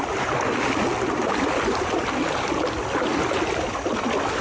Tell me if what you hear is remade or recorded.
recorded